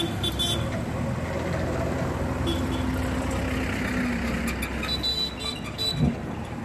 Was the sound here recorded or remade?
recorded